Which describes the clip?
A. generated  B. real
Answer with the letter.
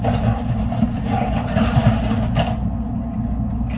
B